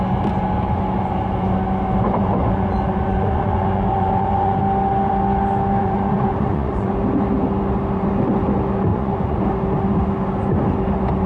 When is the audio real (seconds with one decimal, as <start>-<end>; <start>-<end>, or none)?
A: 0.0-2.4; 4.6-5.8; 7.0-8.9; 9.4-11.3